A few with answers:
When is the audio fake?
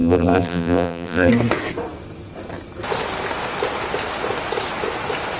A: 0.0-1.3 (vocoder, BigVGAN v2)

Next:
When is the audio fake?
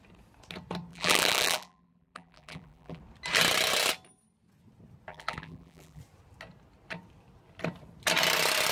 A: 0.9-3.0 (vocoder, BigVGAN v2); 5.1-6.0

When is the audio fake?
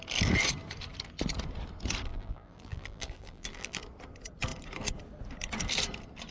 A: 2.1-3.8 (vocoder, BigVGAN v2)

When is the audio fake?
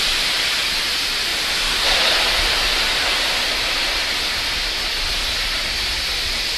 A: none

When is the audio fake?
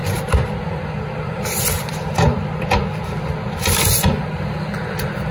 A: none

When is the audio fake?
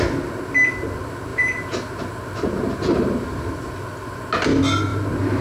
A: 1.3-3.5 (vocoder, BigVGAN v2); 4.9-5.4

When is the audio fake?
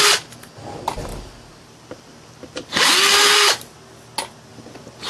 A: 1.1-3.0 (vocoder, BigVGAN v2)